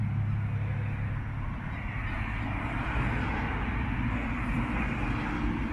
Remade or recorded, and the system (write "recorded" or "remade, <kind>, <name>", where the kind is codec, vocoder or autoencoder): recorded